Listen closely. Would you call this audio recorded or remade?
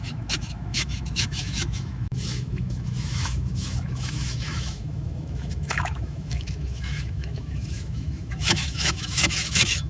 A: remade